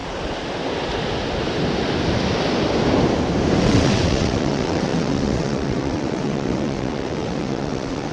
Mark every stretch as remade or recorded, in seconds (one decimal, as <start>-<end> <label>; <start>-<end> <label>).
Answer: 0.0-3.6 recorded; 3.6-8.1 remade